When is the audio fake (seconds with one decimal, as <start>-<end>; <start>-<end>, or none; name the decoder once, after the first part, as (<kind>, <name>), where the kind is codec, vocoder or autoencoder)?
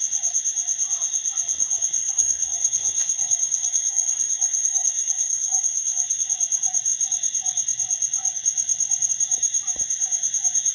2.0-6.3 (codec, SNAC)